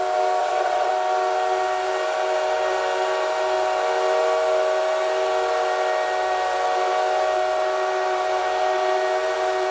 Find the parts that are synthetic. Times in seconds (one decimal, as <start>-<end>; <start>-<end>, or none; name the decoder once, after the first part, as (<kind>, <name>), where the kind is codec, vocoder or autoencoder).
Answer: 0.4-0.9 (vocoder, WaveNeXt)